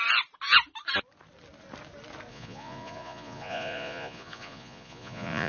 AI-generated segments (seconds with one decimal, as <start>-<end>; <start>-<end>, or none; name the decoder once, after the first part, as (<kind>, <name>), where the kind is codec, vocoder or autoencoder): 2.3-5.5 (vocoder, Vocos)